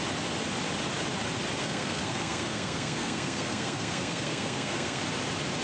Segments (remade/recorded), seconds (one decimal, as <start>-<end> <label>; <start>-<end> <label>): 0.0-1.6 recorded; 1.6-5.0 remade; 5.0-5.6 recorded